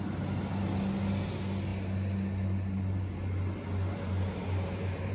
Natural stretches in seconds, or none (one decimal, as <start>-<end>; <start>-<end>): 0.0-5.1